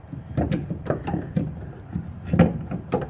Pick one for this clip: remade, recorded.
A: recorded